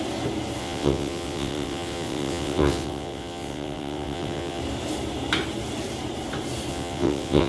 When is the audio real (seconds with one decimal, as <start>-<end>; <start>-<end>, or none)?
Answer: 0.0-0.6; 4.6-6.7